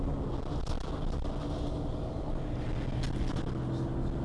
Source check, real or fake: real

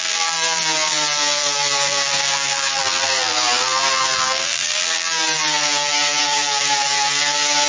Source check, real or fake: fake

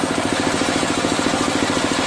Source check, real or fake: real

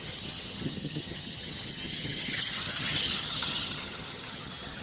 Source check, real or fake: fake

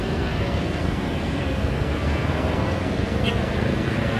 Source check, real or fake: fake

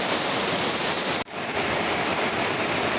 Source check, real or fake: real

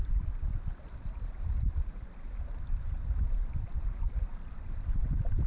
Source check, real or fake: real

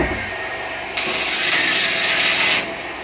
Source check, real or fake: real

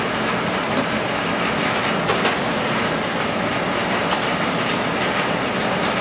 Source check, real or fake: real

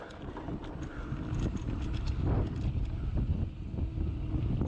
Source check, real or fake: real